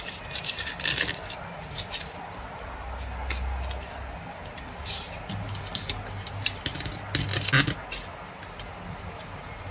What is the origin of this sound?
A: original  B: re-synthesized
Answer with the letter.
A